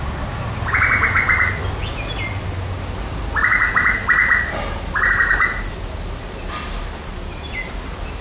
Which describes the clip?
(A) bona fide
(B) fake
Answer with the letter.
A